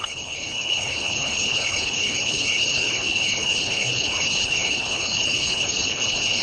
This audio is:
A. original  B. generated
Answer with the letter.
B